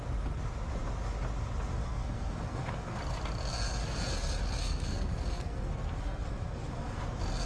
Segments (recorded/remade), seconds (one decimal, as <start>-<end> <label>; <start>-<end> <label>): 0.0-1.8 recorded; 1.8-3.0 remade; 3.0-4.6 recorded; 4.6-7.0 remade; 7.0-7.5 recorded